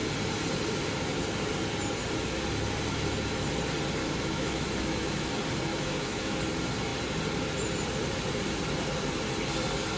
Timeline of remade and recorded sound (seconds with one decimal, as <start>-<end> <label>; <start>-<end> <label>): 0.0-4.0 recorded; 4.0-5.3 remade; 5.3-5.7 recorded; 5.7-6.4 remade; 6.4-10.0 recorded